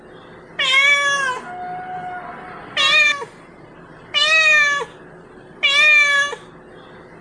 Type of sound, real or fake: real